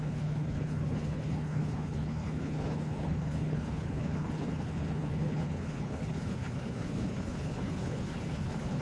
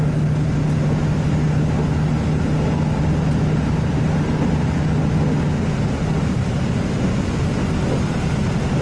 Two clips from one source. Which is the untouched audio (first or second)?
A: second